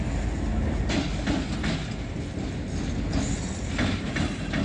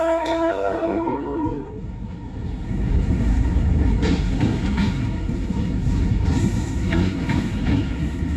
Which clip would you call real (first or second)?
first